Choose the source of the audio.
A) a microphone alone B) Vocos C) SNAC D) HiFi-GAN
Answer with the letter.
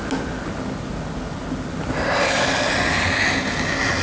A